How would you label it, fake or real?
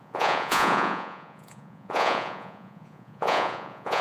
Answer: fake